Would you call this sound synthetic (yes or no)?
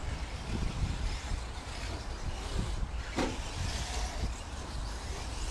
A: no